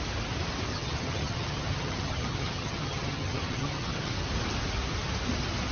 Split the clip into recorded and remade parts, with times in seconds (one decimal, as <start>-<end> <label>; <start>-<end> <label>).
0.0-0.7 recorded; 0.7-4.1 remade; 4.1-5.7 recorded